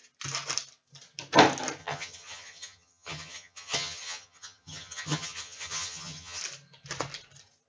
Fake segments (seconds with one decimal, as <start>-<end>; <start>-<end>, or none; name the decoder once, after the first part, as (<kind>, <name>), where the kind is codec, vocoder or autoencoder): 1.8-6.4 (vocoder, HiFi-GAN)